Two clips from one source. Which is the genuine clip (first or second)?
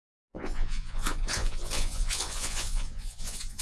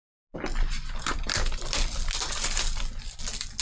second